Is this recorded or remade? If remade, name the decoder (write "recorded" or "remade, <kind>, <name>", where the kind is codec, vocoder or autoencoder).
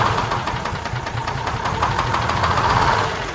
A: remade, vocoder, Vocos